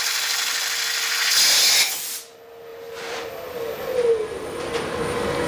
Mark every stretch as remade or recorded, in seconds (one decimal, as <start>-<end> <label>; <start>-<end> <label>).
0.0-2.7 recorded; 2.7-3.3 remade; 3.3-5.5 recorded